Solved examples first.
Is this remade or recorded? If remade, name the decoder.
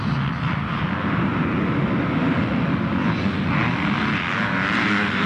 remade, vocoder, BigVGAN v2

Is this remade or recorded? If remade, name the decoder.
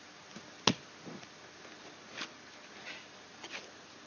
recorded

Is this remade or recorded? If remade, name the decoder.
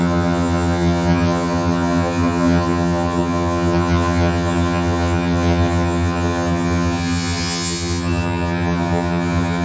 remade, vocoder, HiFi-GAN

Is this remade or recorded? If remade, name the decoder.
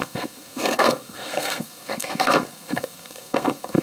remade, codec, SNAC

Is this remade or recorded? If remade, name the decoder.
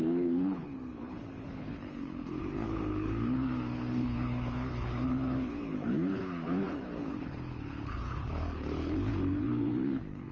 remade, codec, HILCodec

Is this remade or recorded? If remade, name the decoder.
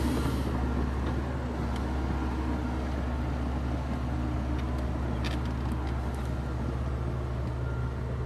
recorded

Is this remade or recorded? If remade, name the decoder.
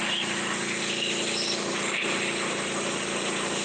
recorded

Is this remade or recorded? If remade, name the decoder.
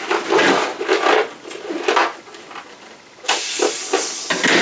recorded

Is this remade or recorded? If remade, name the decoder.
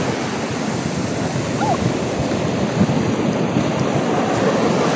recorded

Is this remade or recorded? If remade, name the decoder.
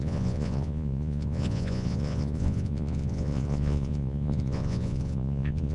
remade, vocoder, Vocos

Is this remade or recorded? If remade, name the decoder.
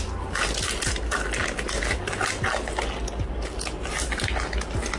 recorded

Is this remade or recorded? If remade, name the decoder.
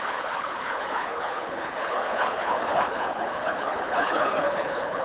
remade, codec, HILCodec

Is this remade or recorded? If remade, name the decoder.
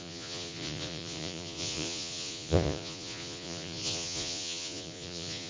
remade, vocoder, Vocos